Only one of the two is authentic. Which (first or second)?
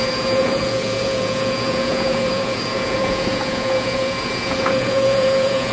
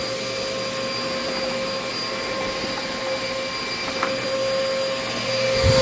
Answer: second